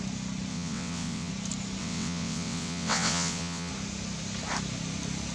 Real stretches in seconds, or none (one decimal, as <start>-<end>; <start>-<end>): 0.0-0.5; 1.3-1.8; 3.7-5.3